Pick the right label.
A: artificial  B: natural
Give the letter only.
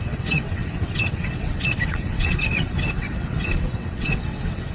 A